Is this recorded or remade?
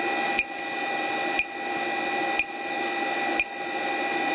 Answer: recorded